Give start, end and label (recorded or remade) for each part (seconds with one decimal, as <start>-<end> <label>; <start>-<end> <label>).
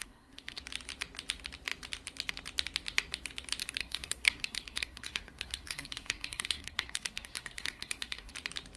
0.0-0.6 remade; 0.6-3.8 recorded; 3.8-8.3 remade; 8.3-8.8 recorded